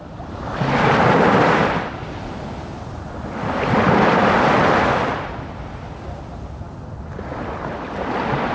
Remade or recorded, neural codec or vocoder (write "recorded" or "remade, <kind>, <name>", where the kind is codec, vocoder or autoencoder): recorded